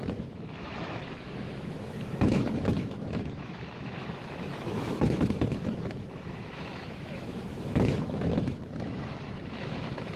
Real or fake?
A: fake